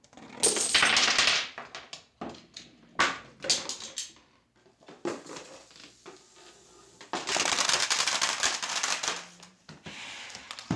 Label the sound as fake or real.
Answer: real